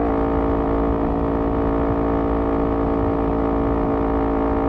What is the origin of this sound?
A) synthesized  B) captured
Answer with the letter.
B